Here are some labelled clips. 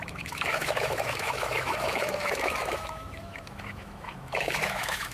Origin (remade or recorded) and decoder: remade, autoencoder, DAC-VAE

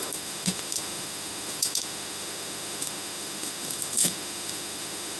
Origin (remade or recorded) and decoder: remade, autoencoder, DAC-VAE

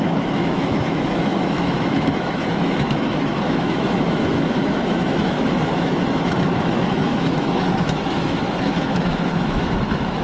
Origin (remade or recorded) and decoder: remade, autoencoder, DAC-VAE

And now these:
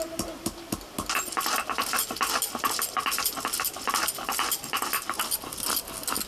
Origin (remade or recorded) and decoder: recorded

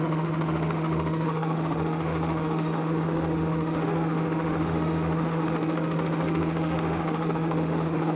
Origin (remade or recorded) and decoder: remade, autoencoder, DAC-VAE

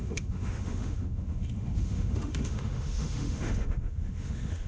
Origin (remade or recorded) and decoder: remade, autoencoder, DAC-VAE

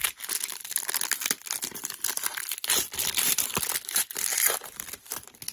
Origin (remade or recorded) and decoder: recorded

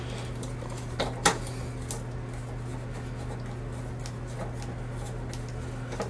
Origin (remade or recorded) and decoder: recorded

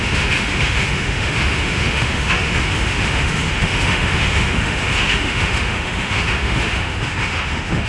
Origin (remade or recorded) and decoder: remade, autoencoder, DAC-VAE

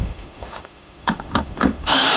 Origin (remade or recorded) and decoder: remade, autoencoder, DAC-VAE